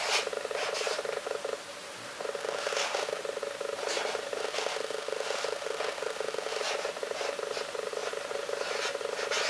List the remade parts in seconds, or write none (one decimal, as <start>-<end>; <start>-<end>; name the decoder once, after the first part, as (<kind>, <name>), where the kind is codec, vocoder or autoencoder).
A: 2.4-3.2 (autoencoder, DAC-VAE); 4.4-6.6